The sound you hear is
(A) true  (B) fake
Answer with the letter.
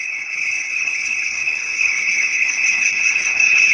B